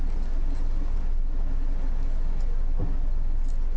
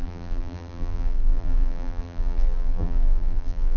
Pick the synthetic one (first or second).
second